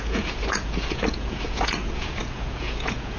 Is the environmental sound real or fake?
fake